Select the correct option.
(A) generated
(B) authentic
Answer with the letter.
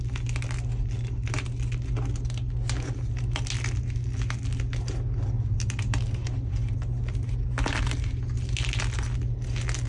B